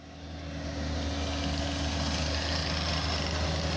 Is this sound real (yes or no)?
yes